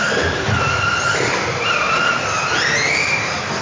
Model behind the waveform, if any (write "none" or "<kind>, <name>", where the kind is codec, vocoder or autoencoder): none